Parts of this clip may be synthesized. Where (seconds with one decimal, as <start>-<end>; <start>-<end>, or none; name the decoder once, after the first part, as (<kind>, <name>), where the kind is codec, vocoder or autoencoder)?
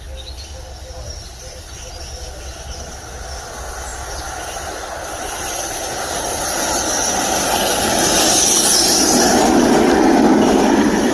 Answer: none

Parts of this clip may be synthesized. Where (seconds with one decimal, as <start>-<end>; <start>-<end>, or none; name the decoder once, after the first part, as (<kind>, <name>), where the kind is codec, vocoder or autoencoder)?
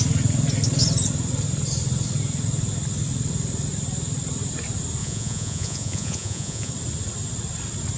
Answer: 5.0-6.7 (vocoder, Vocos)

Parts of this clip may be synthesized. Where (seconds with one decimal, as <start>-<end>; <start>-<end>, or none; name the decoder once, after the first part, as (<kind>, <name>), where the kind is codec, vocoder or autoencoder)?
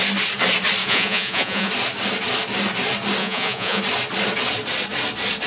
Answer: 0.8-1.7 (vocoder, Vocos); 3.2-3.8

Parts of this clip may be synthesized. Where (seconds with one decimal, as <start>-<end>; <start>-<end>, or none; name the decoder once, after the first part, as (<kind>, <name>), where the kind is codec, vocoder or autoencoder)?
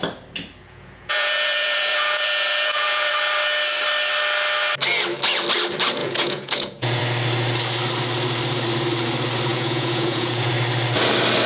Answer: 0.6-3.1 (vocoder, Vocos); 6.0-7.0; 9.5-10.5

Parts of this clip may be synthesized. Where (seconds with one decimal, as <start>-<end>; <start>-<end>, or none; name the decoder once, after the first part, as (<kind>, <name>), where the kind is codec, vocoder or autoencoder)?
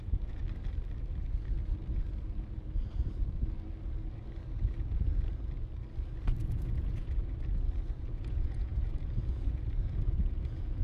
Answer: 0.0-0.4 (vocoder, Vocos); 4.8-5.3; 6.4-7.2; 8.0-10.8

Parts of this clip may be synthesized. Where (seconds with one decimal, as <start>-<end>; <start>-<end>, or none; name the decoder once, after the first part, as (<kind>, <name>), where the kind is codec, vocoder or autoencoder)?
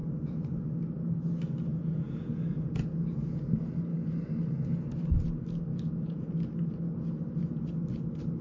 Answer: 0.0-0.6 (vocoder, Vocos); 1.7-3.4; 5.7-6.3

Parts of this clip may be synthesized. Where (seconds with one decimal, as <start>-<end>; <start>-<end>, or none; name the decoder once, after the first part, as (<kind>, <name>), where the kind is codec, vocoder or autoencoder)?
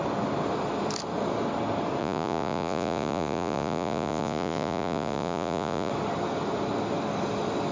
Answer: 2.0-5.9 (vocoder, Vocos)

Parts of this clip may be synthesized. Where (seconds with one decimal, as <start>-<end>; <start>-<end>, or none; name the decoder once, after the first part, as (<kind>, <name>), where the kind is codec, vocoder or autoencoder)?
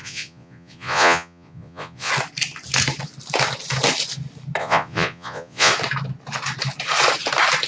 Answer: 0.0-2.1 (vocoder, Vocos); 4.6-5.7